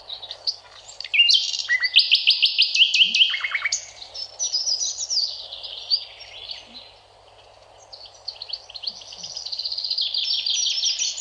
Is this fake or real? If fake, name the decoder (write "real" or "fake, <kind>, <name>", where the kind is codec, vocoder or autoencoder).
real